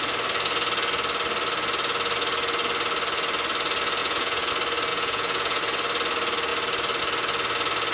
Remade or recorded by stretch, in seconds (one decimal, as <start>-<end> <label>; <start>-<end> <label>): 0.0-4.0 recorded; 4.0-4.5 remade; 4.5-4.9 recorded; 4.9-5.6 remade; 5.6-7.9 recorded